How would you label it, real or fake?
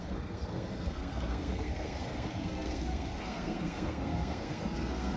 fake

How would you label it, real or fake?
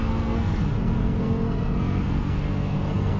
fake